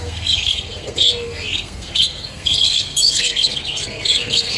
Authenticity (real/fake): fake